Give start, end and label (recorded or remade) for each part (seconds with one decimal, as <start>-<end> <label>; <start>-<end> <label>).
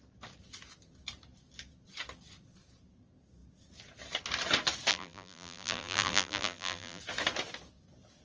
0.0-4.9 recorded; 4.9-7.0 remade; 7.0-8.2 recorded